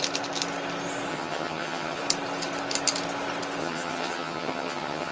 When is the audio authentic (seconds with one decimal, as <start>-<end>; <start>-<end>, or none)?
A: 0.0-1.1; 2.0-3.6